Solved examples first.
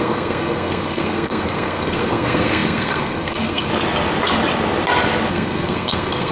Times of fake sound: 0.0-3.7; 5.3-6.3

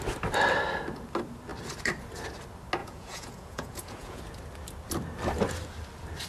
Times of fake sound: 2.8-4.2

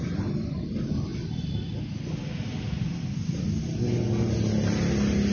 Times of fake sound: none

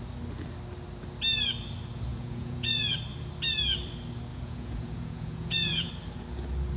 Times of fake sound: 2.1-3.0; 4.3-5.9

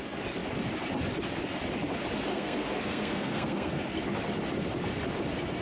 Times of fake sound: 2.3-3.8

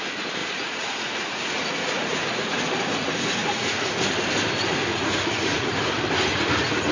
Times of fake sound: 0.4-2.6; 3.4-4.0; 4.9-5.7